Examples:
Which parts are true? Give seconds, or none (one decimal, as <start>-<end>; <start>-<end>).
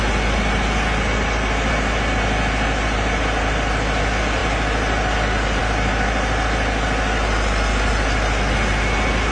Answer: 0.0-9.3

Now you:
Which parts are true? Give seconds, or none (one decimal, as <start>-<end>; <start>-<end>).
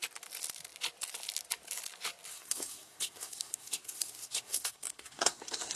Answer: 0.0-2.3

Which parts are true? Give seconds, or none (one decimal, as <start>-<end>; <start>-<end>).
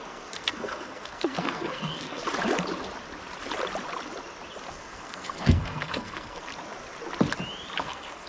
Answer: 2.2-4.7; 6.5-7.8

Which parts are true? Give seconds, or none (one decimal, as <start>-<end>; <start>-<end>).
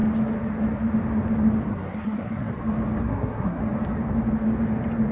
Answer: 0.0-1.7; 2.5-3.0; 3.6-5.1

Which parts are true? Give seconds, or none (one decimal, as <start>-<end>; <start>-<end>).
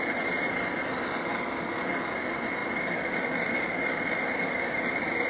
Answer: 0.0-5.3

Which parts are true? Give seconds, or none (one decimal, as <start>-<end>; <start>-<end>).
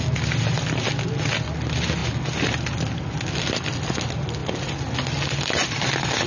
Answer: 0.0-6.3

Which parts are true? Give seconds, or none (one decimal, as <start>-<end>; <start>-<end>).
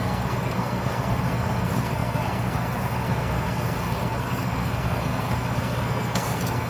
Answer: none